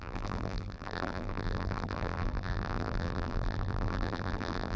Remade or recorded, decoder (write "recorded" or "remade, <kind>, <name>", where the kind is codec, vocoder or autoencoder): remade, vocoder, BigVGAN v2